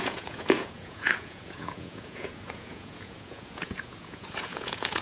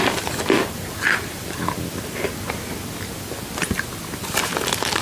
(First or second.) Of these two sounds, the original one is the second